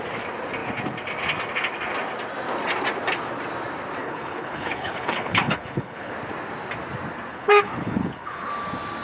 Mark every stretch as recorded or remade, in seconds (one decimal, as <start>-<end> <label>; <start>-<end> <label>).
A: 0.0-4.0 recorded; 4.0-6.1 remade; 6.1-7.3 recorded; 7.3-8.5 remade; 8.5-9.0 recorded